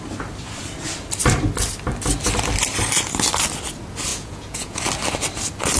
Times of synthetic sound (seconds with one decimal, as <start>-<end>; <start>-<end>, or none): 4.1-4.8